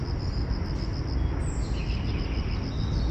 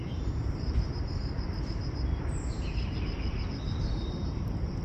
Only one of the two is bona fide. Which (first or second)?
first